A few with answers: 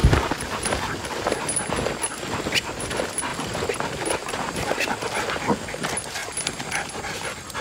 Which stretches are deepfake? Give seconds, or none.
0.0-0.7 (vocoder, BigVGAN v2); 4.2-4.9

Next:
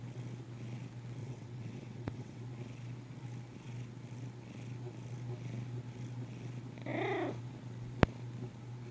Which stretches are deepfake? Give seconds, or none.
1.2-2.4 (vocoder, WaveNeXt)